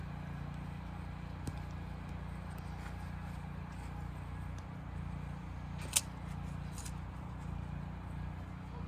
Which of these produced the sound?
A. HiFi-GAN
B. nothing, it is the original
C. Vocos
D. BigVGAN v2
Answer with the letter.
B